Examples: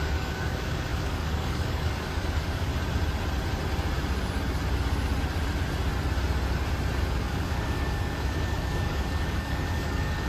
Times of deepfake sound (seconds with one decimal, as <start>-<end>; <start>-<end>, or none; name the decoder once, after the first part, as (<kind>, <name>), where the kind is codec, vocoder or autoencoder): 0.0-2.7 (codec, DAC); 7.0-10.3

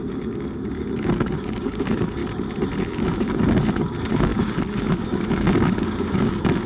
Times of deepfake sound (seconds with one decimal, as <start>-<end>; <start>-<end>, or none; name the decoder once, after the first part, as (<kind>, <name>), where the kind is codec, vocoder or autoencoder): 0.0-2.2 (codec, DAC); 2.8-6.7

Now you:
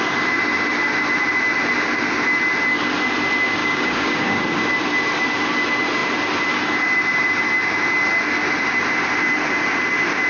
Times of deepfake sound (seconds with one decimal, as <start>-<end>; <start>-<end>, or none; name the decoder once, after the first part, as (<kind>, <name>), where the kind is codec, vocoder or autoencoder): 3.6-4.4 (codec, DAC)

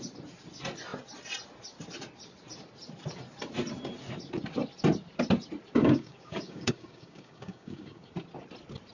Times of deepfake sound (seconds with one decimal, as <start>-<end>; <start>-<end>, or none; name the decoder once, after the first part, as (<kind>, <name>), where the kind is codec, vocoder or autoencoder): 5.8-8.1 (codec, DAC)

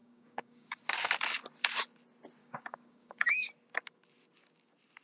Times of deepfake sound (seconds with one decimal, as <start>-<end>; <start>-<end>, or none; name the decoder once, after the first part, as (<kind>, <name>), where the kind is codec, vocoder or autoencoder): 0.0-0.8 (codec, DAC); 2.4-3.5

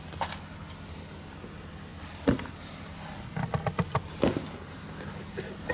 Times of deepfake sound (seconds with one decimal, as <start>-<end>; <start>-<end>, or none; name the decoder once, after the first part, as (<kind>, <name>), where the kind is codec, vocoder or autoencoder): none